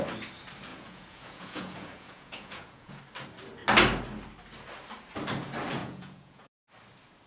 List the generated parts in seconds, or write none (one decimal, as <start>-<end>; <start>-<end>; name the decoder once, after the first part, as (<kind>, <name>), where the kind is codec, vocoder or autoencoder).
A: 0.7-3.0 (vocoder, Vocos); 5.8-6.5